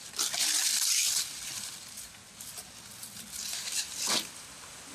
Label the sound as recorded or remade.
recorded